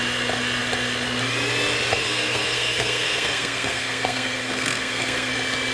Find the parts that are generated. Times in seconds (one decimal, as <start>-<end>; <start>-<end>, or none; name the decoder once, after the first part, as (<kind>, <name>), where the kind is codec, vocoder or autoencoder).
1.9-5.3 (codec, SNAC)